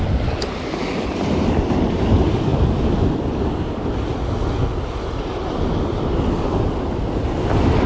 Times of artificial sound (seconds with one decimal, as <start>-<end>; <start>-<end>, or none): none